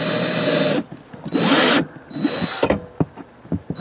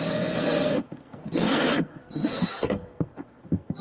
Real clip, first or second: first